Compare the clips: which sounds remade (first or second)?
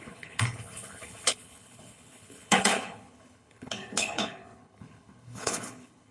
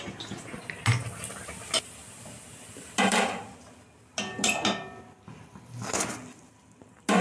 first